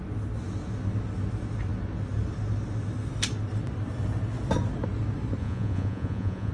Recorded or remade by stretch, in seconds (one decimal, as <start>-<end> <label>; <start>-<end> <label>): 0.0-5.4 recorded; 5.4-6.5 remade